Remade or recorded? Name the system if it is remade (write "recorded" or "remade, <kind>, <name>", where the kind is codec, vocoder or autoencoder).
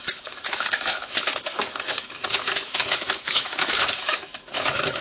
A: remade, autoencoder, DAC-VAE